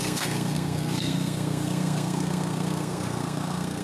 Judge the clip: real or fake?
fake